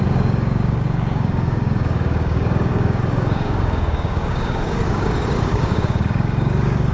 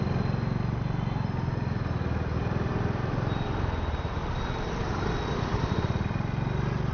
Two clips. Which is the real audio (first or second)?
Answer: second